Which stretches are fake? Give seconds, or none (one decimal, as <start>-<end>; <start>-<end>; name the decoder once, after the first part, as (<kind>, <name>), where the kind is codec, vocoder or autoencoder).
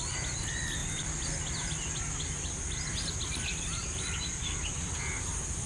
none